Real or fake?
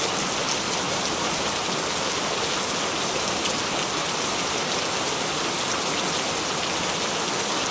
real